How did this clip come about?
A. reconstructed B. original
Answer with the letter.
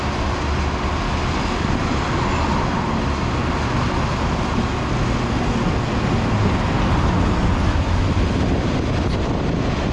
B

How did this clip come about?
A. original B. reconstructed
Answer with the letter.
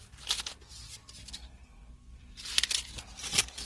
A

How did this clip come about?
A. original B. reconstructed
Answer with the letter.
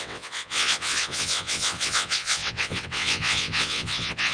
B